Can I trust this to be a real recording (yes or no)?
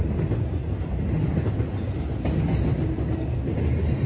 yes